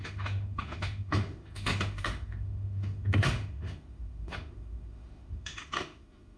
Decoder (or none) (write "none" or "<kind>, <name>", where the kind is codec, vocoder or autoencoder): autoencoder, DAC-VAE